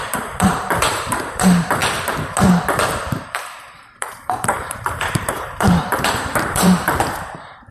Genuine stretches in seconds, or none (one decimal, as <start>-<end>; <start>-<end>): 1.8-3.0